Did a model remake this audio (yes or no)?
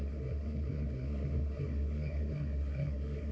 yes